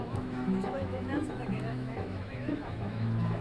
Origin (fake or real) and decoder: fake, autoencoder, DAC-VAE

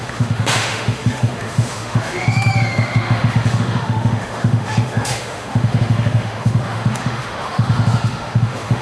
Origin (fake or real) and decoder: fake, autoencoder, DAC-VAE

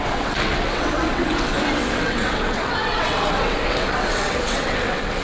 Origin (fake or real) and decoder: fake, vocoder, WaveNeXt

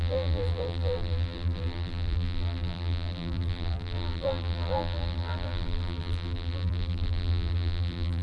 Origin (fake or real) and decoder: fake, vocoder, BigVGAN v2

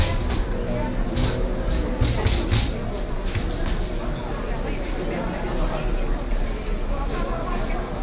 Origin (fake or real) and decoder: real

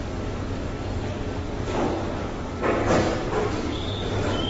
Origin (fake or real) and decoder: fake, codec, DAC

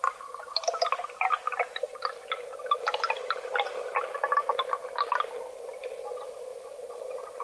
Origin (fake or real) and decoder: real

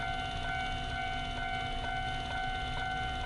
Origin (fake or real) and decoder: real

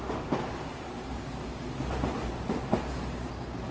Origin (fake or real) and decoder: real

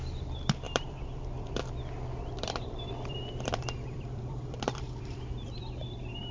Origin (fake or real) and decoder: fake, vocoder, BigVGAN v2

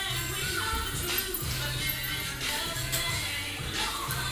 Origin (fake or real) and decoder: real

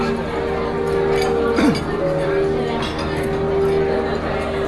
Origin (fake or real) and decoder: real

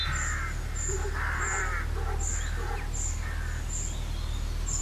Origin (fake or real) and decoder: real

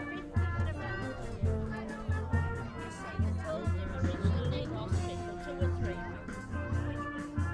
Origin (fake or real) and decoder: real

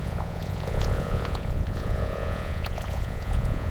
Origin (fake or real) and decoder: fake, vocoder, Vocos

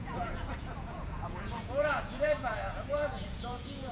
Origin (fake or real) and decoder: fake, vocoder, Vocos